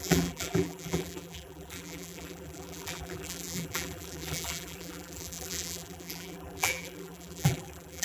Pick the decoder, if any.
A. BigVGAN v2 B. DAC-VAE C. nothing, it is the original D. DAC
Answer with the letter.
A